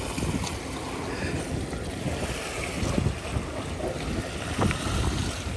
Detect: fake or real real